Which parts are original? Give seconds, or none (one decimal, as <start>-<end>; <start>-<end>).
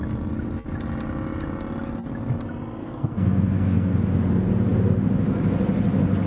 0.0-2.8; 3.9-6.3